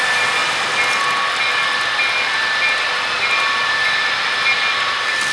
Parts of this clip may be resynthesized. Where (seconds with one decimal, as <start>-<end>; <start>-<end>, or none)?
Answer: none